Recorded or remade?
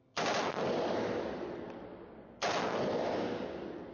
recorded